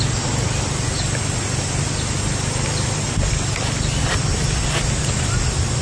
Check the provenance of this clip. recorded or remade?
recorded